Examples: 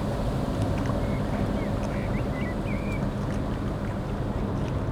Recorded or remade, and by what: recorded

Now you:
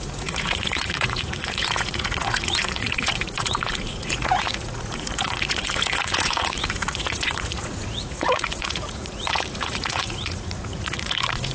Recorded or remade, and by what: remade, vocoder, Vocos